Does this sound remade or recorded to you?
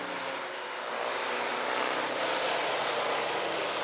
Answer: recorded